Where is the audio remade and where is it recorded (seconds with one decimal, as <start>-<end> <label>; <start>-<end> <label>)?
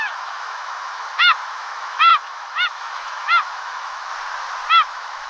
0.0-4.1 remade; 4.1-4.7 recorded; 4.7-5.3 remade